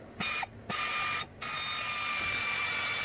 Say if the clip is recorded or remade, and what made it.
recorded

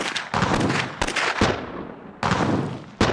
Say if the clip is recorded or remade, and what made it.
recorded